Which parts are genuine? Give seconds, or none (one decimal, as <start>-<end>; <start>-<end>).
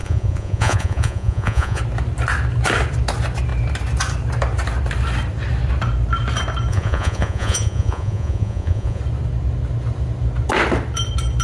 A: 1.8-6.7; 9.0-11.4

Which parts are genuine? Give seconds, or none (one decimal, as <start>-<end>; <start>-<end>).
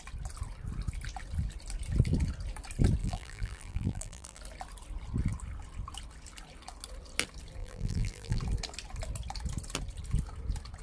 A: 0.0-3.0; 4.4-7.6; 8.4-10.8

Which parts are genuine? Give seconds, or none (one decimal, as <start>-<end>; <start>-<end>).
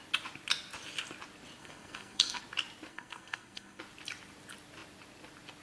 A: 0.0-1.6; 2.4-2.9; 3.8-5.6